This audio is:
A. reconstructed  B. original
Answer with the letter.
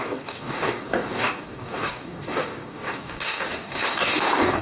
A